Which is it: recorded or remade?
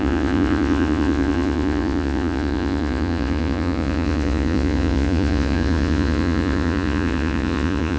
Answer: remade